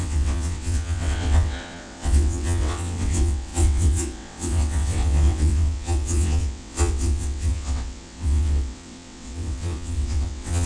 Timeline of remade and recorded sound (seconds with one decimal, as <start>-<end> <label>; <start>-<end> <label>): 0.0-10.7 remade